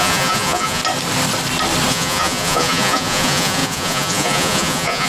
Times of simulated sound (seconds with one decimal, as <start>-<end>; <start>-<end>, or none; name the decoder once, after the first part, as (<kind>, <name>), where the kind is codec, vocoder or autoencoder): 0.0-0.8 (vocoder, Vocos); 1.9-5.1